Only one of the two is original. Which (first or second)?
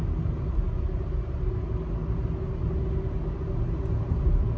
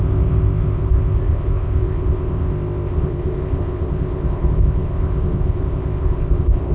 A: first